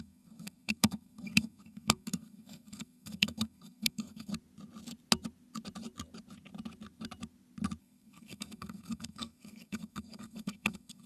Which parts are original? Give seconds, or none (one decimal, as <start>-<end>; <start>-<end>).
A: 4.3-7.8

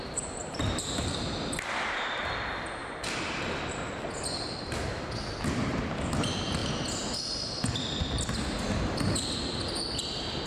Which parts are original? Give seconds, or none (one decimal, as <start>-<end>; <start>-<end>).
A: 0.0-0.4; 2.2-2.8; 3.4-10.5